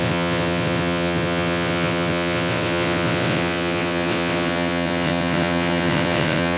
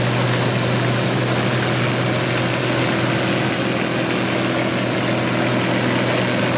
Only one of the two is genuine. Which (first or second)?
second